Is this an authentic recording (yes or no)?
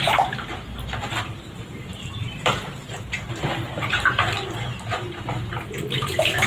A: no